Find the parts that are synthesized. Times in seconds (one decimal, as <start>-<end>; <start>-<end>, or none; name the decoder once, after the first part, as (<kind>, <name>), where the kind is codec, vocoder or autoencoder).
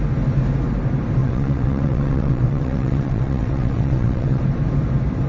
1.2-4.4 (vocoder, WaveNeXt)